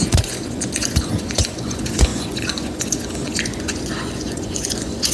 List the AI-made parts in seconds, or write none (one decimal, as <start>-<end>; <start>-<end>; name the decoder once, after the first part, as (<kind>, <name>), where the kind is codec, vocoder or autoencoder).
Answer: 0.0-5.1 (vocoder, Vocos)